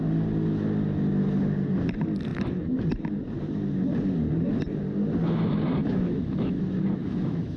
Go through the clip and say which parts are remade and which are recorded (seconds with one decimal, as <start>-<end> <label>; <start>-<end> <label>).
0.0-5.8 recorded; 5.8-6.6 remade; 6.6-7.0 recorded; 7.0-7.6 remade